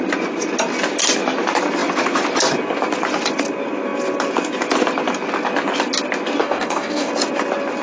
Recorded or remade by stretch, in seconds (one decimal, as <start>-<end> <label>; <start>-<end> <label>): 0.0-6.4 recorded; 6.4-7.1 remade; 7.1-7.8 recorded